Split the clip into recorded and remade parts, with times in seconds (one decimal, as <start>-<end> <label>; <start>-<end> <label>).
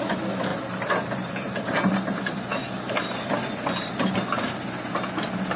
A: 0.0-0.5 recorded; 0.5-3.9 remade; 3.9-5.6 recorded